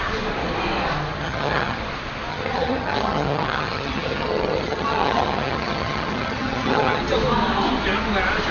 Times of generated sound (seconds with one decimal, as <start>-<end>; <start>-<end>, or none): 1.2-1.8; 2.3-7.0